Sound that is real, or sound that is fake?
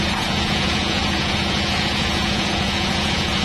fake